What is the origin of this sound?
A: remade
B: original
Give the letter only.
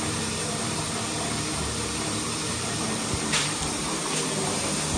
A